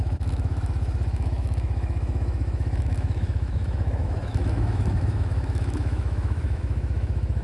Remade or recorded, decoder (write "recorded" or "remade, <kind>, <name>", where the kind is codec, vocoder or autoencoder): remade, autoencoder, DAC-VAE